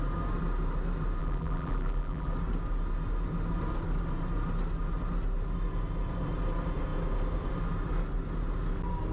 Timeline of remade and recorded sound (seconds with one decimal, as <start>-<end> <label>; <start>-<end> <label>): 0.0-1.2 recorded; 1.2-2.3 remade; 2.3-9.1 recorded